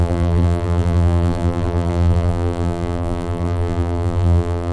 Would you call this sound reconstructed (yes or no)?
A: yes